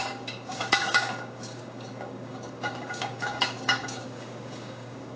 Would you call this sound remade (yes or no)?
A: yes